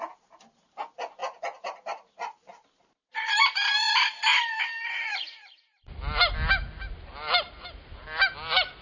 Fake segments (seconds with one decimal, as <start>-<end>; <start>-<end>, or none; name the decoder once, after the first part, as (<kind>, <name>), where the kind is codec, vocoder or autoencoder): none